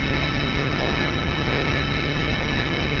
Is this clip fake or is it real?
fake